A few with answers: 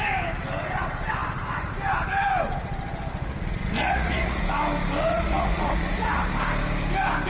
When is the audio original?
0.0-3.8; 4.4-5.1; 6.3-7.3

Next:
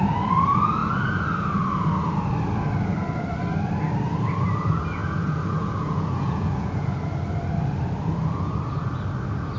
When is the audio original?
0.0-5.0; 6.9-9.6